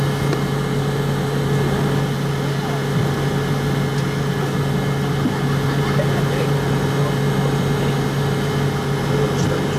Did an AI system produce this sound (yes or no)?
no